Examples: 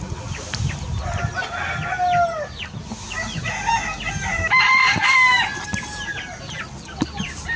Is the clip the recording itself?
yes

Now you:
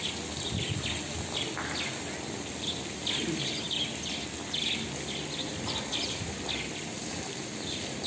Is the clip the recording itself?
yes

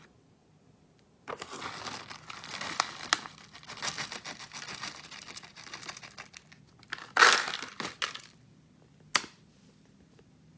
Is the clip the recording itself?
yes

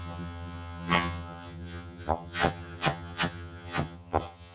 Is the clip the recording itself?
no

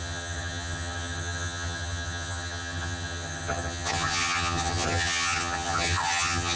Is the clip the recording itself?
no